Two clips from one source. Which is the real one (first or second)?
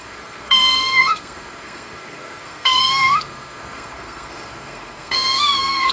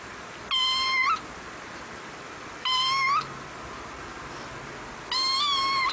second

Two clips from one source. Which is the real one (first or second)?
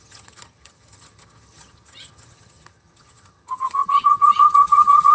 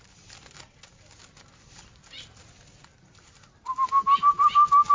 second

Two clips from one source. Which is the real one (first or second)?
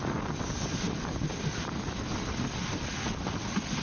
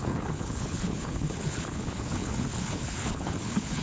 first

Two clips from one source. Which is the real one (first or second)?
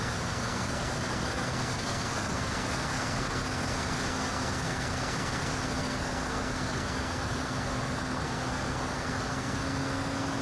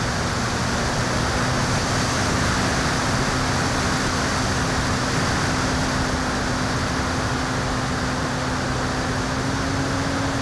second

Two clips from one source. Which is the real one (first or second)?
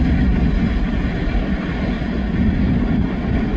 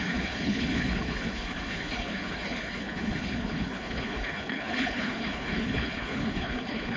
first